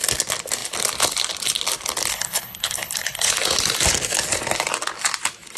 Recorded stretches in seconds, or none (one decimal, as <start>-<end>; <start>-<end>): 0.0-2.1; 3.3-5.6